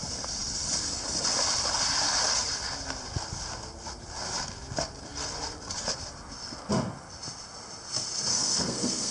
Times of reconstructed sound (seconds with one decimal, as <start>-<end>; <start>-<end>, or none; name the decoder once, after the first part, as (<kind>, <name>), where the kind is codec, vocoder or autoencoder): 8.3-9.1 (codec, SNAC)